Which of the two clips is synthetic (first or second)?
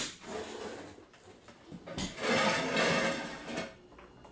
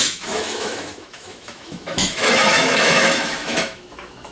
second